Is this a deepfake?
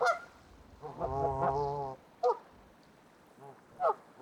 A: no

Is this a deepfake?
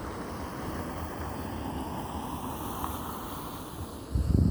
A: yes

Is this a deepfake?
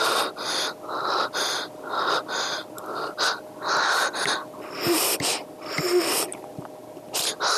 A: no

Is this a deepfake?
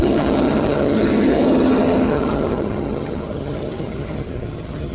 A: yes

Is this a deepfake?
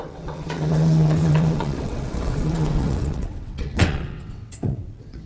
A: yes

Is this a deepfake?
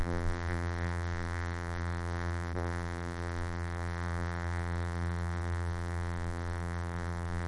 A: yes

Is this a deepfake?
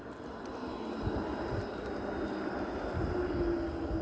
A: no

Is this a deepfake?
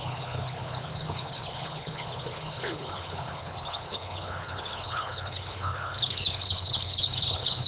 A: yes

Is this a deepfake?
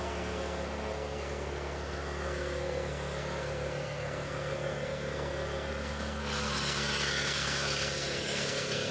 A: yes